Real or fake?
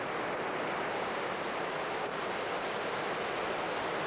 real